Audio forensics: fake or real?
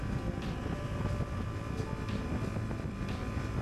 real